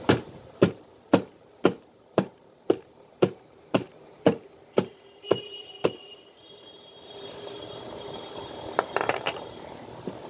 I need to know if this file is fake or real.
fake